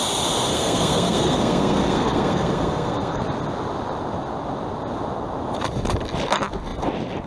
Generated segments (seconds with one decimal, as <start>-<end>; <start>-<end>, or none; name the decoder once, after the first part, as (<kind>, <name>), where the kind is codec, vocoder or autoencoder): 0.5-3.2 (codec, SNAC)